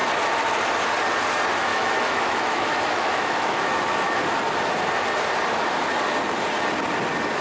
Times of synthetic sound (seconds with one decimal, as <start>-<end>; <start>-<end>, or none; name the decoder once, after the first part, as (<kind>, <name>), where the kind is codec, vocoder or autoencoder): 1.7-4.2 (autoencoder, DAC-VAE)